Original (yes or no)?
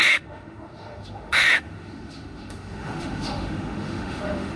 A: no